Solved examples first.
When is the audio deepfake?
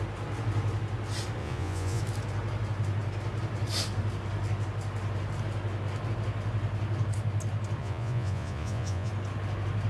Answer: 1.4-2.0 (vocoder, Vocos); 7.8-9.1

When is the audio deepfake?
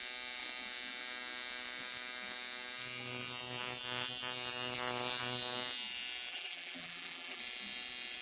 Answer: 6.3-7.4 (vocoder, BigVGAN v2)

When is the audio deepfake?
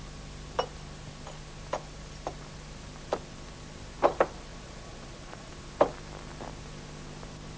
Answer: 4.5-5.5 (vocoder, Vocos)